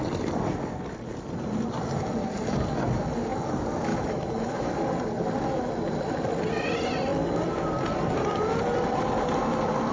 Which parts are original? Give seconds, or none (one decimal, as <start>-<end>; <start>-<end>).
0.0-3.9; 4.7-9.9

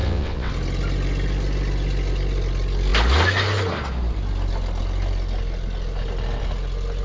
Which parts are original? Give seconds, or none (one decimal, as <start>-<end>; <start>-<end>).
0.5-7.0

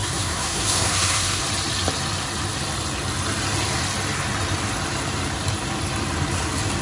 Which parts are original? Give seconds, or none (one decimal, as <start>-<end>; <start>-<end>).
1.4-6.8